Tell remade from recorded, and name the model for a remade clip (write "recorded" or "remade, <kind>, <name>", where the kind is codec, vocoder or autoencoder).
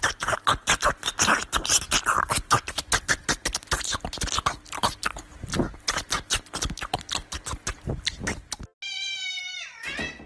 recorded